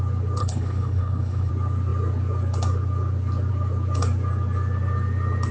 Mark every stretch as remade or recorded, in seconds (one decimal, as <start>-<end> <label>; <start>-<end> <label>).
0.0-0.4 recorded; 0.4-1.5 remade; 1.5-5.5 recorded